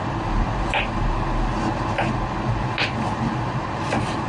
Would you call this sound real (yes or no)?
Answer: yes